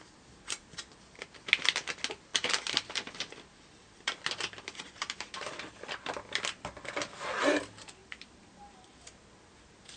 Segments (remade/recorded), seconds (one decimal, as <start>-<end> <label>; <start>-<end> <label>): 0.0-2.3 recorded; 2.3-6.9 remade; 6.9-8.0 recorded; 8.0-8.6 remade; 8.6-10.0 recorded